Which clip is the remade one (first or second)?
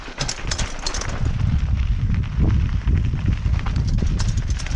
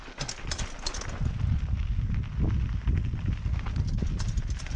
first